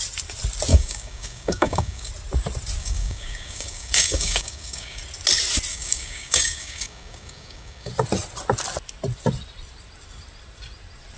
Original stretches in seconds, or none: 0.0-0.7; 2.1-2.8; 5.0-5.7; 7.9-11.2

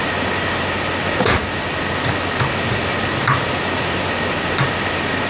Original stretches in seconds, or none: 0.0-5.3